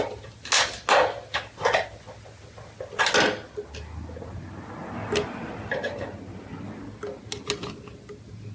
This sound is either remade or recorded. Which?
recorded